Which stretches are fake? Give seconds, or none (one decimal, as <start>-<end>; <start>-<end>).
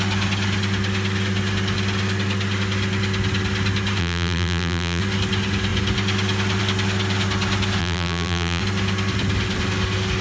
4.0-5.0; 7.8-8.6